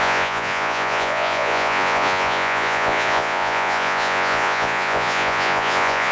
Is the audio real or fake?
fake